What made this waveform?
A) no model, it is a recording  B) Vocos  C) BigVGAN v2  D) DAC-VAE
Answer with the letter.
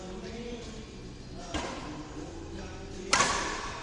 A